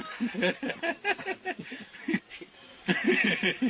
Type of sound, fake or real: real